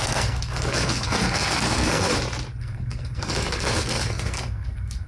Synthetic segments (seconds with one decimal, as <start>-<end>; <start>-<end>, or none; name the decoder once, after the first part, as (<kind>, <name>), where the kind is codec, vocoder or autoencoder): 0.0-2.1 (codec, SNAC); 2.6-5.1